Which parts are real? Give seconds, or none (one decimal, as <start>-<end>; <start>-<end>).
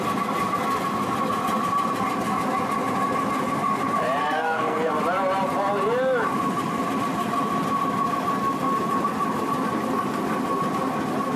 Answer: 0.0-4.2; 4.9-11.4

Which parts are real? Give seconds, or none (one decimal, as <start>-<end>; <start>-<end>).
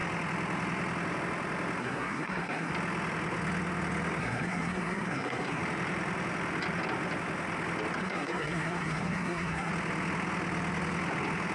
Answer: 0.0-1.8; 2.7-4.2; 5.6-8.0; 9.7-11.5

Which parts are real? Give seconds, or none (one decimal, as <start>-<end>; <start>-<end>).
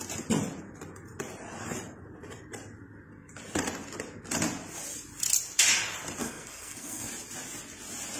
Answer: 0.0-6.2; 7.1-8.2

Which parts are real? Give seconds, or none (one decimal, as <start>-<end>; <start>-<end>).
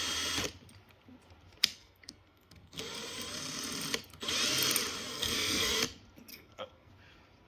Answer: 0.0-1.7; 2.8-5.1; 5.7-6.3; 6.9-7.5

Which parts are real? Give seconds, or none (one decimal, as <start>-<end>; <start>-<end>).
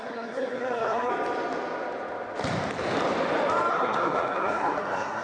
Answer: 1.1-3.7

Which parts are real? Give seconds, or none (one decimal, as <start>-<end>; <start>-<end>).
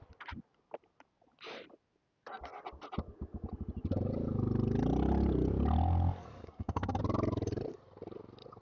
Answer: 0.0-6.2; 7.0-8.6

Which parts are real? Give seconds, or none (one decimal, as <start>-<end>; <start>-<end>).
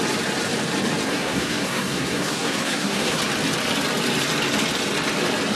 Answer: 0.0-1.1; 3.2-5.5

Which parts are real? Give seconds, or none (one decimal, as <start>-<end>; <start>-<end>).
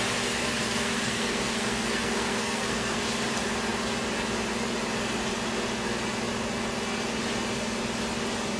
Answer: 0.0-0.4; 3.0-8.6